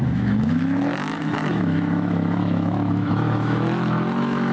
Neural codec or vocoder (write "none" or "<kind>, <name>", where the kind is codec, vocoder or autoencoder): autoencoder, DAC-VAE